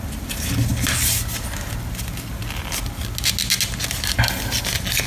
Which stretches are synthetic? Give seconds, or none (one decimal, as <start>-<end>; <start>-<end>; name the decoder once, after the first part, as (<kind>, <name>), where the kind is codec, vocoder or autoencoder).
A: none